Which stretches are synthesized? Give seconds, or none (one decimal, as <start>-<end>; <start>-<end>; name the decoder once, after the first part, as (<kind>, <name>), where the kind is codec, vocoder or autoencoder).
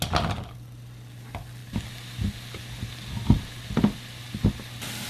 none